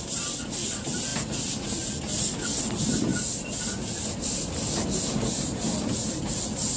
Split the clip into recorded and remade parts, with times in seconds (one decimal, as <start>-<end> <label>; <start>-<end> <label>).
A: 0.0-6.8 recorded